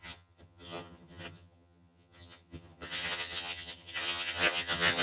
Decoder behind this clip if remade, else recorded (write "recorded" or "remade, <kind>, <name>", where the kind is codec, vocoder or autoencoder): remade, vocoder, HiFi-GAN